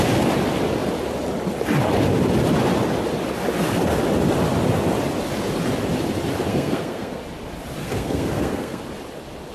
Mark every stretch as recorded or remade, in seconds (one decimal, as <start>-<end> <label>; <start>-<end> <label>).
0.0-6.5 recorded; 6.5-7.2 remade; 7.2-7.8 recorded; 7.8-8.8 remade; 8.8-9.5 recorded